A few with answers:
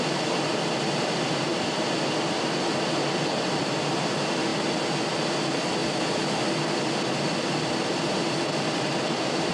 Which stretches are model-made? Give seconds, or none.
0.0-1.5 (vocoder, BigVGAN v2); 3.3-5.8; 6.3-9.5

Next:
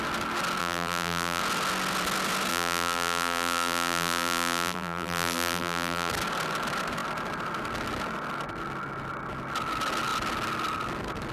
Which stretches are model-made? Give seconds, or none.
0.6-1.4 (vocoder, BigVGAN v2); 2.5-6.1

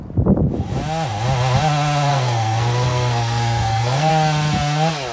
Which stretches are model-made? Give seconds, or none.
2.1-4.1 (codec, SNAC)